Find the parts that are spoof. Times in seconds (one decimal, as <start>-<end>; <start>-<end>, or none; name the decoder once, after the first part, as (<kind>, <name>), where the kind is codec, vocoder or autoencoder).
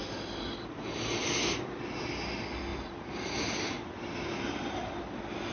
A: none